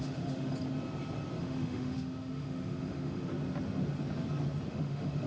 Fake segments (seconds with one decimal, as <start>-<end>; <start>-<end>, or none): 0.0-0.5; 1.4-3.3; 4.7-5.3